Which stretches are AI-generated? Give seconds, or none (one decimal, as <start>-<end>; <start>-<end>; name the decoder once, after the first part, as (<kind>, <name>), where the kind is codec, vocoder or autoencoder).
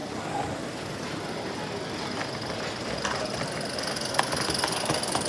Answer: none